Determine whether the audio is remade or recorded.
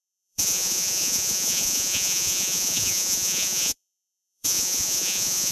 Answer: remade